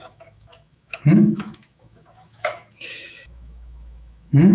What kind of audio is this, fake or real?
fake